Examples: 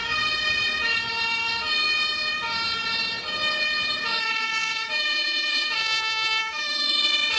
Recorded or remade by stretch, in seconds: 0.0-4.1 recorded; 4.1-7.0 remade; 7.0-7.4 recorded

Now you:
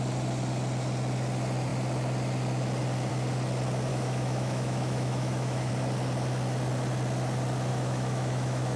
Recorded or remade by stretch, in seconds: 0.0-3.9 recorded; 3.9-5.7 remade; 5.7-7.7 recorded; 7.7-8.8 remade

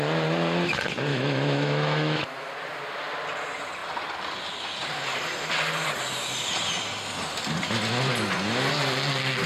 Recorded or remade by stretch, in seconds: 0.0-1.1 recorded; 1.1-2.5 remade; 2.5-9.5 recorded

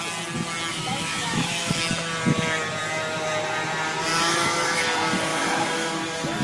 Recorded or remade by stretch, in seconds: 0.0-0.7 recorded; 0.7-1.8 remade; 1.8-4.1 recorded; 4.1-4.8 remade; 4.8-5.3 recorded; 5.3-6.0 remade; 6.0-6.4 recorded